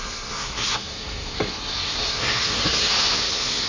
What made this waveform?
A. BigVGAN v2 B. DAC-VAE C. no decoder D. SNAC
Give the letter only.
D